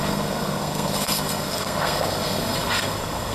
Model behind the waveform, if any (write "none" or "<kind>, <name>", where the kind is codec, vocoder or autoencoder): codec, SNAC